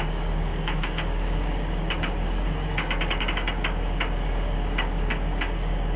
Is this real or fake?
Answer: fake